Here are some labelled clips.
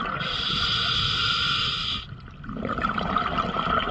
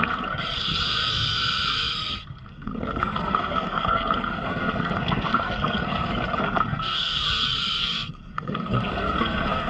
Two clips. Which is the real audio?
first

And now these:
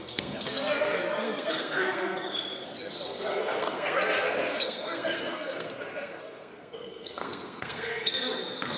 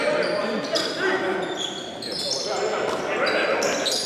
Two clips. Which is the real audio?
second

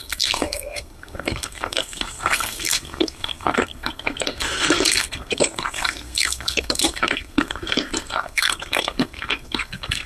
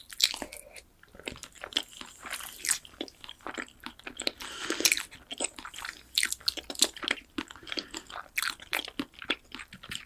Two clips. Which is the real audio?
second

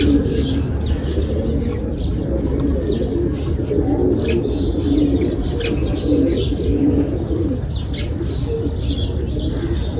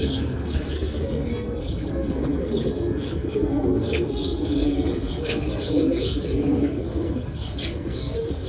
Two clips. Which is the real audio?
first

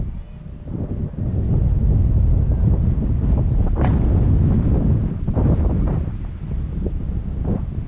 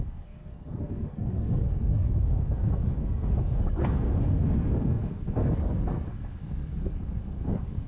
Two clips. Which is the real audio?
first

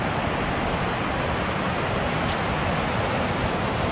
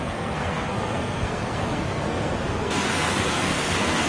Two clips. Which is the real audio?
first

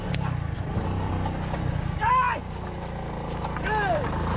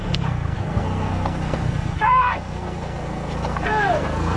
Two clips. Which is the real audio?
first